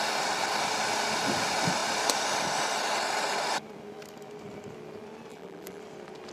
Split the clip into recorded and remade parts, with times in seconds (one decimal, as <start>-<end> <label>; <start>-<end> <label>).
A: 0.0-5.3 recorded; 5.3-5.8 remade; 5.8-6.3 recorded